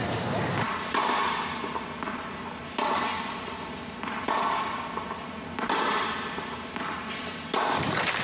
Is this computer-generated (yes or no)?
no